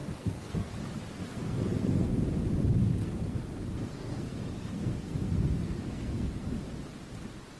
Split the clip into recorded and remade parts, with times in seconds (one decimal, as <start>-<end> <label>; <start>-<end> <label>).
0.0-0.7 remade; 0.7-1.2 recorded; 1.2-2.2 remade; 2.2-3.0 recorded; 3.0-6.5 remade; 6.5-7.6 recorded